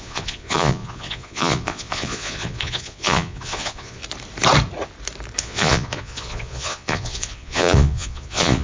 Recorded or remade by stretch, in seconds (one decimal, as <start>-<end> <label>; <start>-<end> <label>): 0.0-4.0 remade; 4.0-5.4 recorded; 5.4-8.6 remade